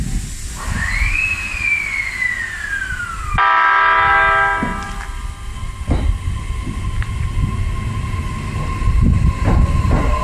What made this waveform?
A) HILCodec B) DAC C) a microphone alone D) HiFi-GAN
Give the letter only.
C